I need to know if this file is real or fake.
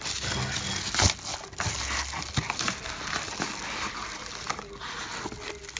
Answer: real